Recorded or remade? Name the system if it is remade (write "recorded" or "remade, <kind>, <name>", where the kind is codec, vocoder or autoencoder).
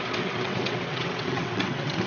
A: remade, vocoder, WaveNeXt